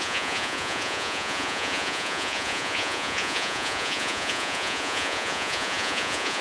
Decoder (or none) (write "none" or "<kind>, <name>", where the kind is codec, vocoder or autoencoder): vocoder, Vocos